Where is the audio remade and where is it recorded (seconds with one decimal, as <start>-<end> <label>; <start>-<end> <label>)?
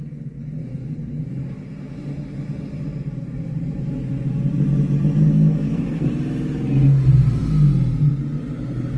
0.0-5.3 recorded; 5.3-6.1 remade; 6.1-9.0 recorded